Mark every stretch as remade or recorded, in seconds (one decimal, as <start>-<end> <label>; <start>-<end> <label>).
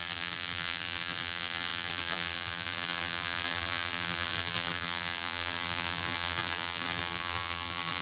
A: 0.0-8.0 remade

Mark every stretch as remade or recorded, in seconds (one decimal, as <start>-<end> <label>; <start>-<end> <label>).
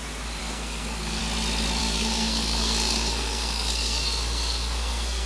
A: 0.0-0.4 recorded; 0.4-1.2 remade; 1.2-1.8 recorded; 1.8-5.3 remade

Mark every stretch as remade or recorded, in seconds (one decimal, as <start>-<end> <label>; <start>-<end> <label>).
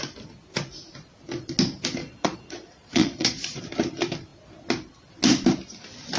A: 0.0-2.0 recorded; 2.0-3.6 remade; 3.6-6.2 recorded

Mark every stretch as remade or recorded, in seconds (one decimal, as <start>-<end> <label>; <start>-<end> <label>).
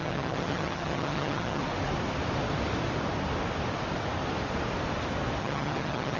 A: 0.0-1.6 remade; 1.6-5.4 recorded; 5.4-6.2 remade